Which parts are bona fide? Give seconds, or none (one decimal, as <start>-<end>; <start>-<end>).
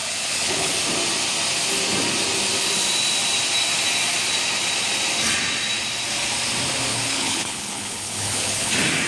0.7-6.9; 8.7-9.1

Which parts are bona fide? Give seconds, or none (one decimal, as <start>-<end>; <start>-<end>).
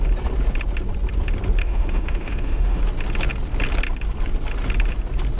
0.0-1.6; 2.8-5.4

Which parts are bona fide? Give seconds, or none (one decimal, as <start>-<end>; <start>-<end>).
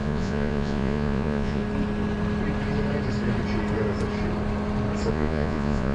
1.6-5.1